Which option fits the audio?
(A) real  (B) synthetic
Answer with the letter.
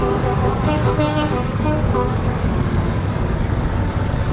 B